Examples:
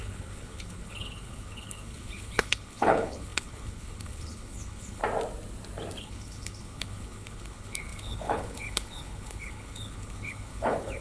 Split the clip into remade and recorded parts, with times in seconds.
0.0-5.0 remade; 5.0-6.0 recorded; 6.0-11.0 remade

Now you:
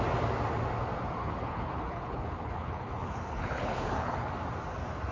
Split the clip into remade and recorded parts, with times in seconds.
0.0-1.2 recorded; 1.2-4.3 remade; 4.3-5.1 recorded

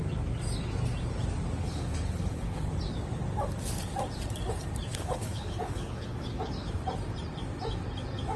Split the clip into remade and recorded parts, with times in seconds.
0.0-1.6 recorded; 1.6-2.7 remade; 2.7-4.9 recorded; 4.9-6.5 remade; 6.5-8.4 recorded

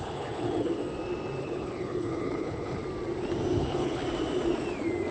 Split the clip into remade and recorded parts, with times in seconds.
0.0-0.8 remade; 0.8-1.4 recorded; 1.4-2.8 remade; 2.8-3.6 recorded; 3.6-4.0 remade; 4.0-5.1 recorded

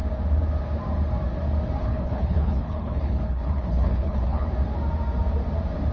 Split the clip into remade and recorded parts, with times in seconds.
0.0-1.8 recorded; 1.8-4.5 remade; 4.5-5.9 recorded

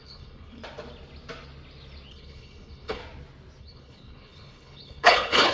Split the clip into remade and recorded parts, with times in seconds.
0.0-0.6 remade; 0.6-2.1 recorded; 2.1-3.0 remade; 3.0-3.6 recorded; 3.6-5.5 remade

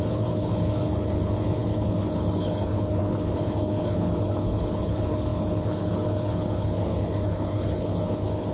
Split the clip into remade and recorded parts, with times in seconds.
0.0-8.5 remade

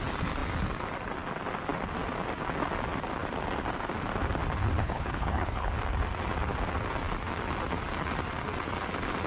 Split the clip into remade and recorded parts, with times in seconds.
0.0-4.8 recorded; 4.8-5.7 remade; 5.7-9.3 recorded